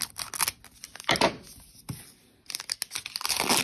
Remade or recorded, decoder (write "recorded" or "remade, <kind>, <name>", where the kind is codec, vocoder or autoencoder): recorded